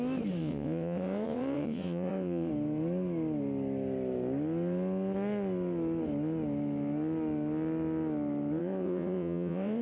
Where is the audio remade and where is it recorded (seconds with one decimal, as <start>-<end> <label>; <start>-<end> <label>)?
0.0-0.4 recorded; 0.4-2.5 remade; 2.5-8.6 recorded; 8.6-9.8 remade